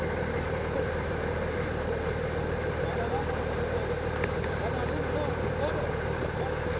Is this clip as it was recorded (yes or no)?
yes